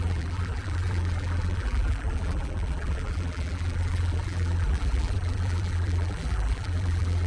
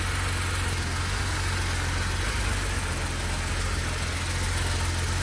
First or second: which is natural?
second